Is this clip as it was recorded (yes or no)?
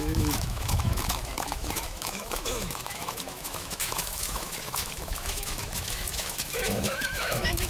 no